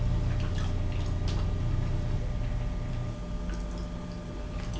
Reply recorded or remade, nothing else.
recorded